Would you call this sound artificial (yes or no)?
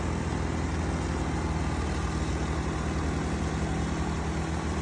no